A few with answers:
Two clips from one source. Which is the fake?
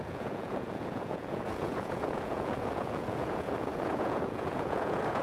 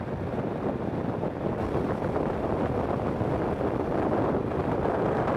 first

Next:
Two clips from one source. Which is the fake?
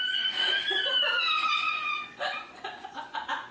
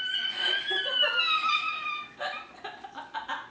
first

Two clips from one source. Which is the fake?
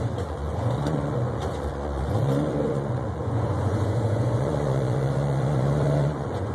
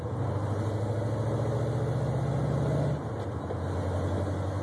first